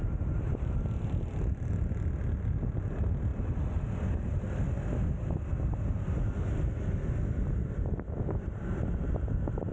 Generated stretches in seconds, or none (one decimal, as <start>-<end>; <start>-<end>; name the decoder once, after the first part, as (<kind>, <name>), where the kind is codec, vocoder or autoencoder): none